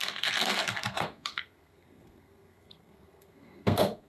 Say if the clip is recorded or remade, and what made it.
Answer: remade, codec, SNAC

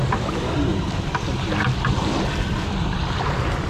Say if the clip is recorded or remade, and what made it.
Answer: recorded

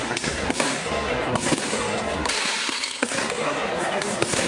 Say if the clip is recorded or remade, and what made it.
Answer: remade, codec, SNAC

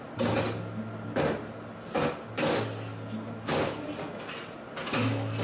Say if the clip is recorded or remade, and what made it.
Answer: recorded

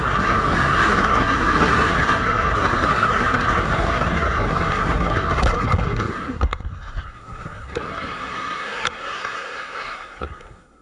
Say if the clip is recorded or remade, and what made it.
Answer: remade, codec, SNAC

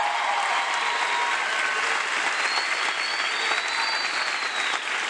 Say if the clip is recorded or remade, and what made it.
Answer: recorded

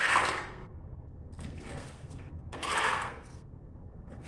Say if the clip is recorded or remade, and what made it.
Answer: remade, codec, SNAC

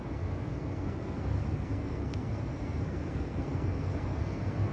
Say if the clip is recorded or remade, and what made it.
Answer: remade, codec, SNAC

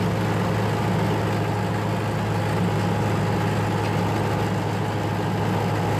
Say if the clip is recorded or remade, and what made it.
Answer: recorded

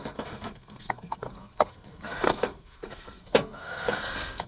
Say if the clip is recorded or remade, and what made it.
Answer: remade, codec, SNAC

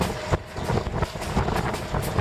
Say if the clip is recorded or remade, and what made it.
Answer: recorded